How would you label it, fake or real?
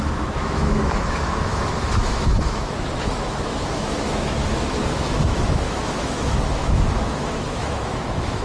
fake